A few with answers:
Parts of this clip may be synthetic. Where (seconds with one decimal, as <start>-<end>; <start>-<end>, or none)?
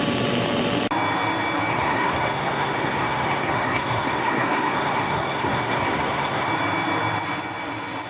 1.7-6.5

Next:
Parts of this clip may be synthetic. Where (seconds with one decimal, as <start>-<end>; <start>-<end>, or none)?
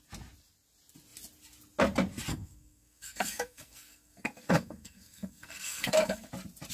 2.3-6.3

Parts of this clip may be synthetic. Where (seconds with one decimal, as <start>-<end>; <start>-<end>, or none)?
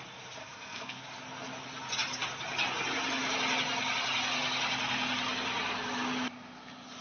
0.4-1.0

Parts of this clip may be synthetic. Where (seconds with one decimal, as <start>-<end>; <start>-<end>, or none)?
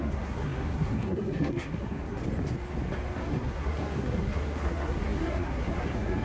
0.0-2.2; 3.3-6.2